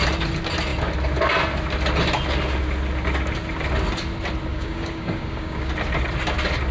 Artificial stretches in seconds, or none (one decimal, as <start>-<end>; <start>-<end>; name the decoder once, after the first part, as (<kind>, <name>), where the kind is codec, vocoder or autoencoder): 4.5-5.7 (codec, DAC)